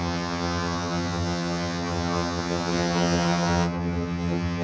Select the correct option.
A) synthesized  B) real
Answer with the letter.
A